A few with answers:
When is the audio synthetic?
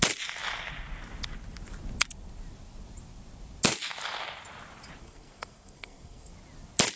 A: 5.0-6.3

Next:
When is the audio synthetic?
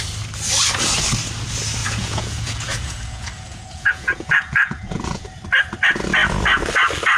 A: 1.8-5.4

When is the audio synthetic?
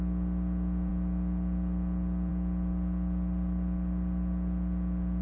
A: none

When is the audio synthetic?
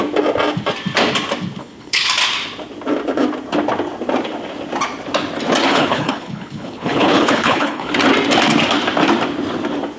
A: 1.6-2.1; 5.7-7.9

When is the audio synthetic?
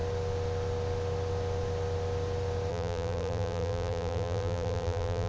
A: 2.7-5.3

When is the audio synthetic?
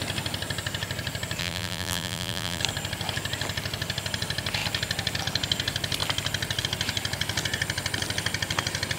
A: 1.4-2.6